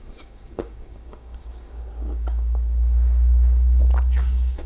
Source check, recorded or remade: remade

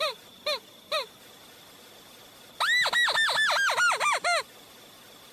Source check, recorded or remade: recorded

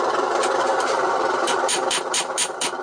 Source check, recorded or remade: remade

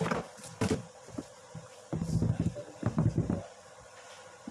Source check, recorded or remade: recorded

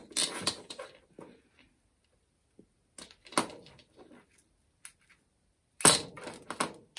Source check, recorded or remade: recorded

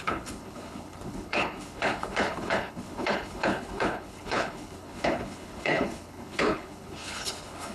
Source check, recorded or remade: remade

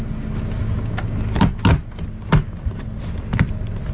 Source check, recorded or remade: recorded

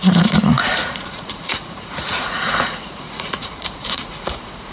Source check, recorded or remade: remade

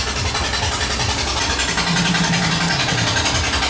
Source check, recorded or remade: recorded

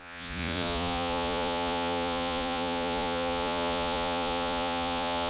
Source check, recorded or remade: remade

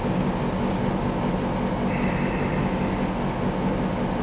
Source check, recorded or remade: recorded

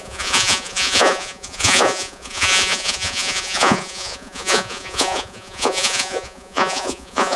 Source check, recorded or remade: remade